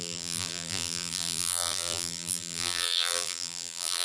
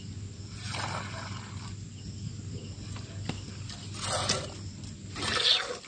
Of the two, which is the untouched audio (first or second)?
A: second